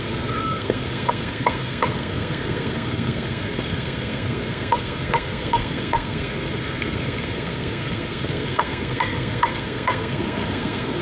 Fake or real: fake